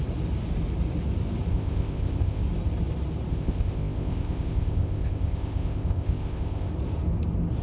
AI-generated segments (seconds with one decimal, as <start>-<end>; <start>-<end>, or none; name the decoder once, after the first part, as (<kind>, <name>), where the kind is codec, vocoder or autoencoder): 1.5-2.4 (codec, ZipCodec); 3.3-6.7